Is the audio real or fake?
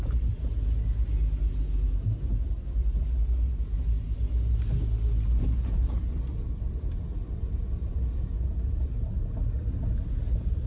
real